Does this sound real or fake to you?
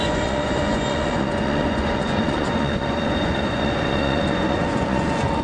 fake